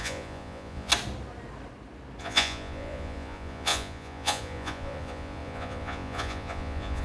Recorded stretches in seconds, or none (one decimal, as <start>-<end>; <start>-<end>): 0.9-2.2